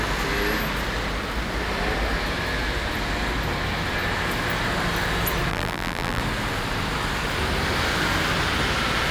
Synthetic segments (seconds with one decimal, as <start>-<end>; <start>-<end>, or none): 5.5-6.2